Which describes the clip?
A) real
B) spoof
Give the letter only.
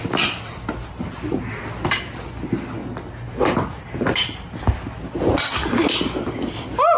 A